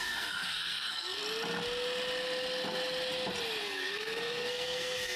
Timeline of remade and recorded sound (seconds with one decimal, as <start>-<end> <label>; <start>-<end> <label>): 0.0-1.2 remade; 1.2-3.6 recorded; 3.6-5.2 remade

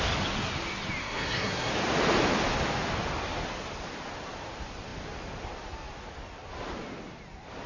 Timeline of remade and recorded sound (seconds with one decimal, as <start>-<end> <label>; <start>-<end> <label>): 0.0-1.0 recorded; 1.0-1.7 remade; 1.7-7.7 recorded

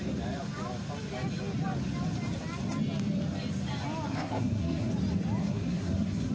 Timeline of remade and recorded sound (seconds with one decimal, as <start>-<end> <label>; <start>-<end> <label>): 0.0-4.1 recorded; 4.1-4.9 remade; 4.9-5.4 recorded; 5.4-6.3 remade

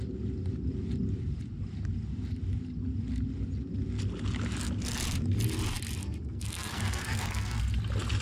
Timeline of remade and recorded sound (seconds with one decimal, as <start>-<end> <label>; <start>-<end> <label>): 0.0-6.0 recorded; 6.0-7.7 remade; 7.7-8.2 recorded